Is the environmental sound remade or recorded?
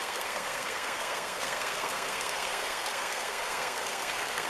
remade